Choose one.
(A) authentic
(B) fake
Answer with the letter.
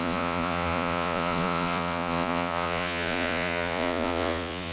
B